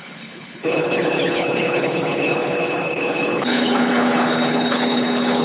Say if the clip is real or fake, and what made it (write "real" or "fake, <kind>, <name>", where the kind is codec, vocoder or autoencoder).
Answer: fake, codec, HILCodec